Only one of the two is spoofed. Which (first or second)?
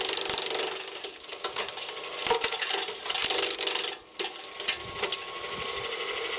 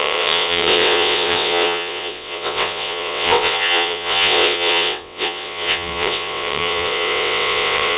second